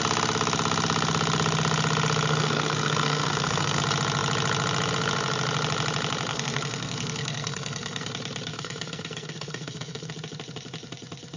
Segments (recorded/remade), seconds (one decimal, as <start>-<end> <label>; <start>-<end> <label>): 0.0-2.3 recorded; 2.3-3.8 remade; 3.8-6.3 recorded; 6.3-8.1 remade; 8.1-8.5 recorded; 8.5-10.1 remade; 10.1-11.4 recorded